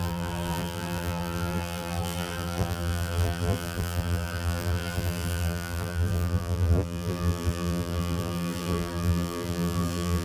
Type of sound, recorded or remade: remade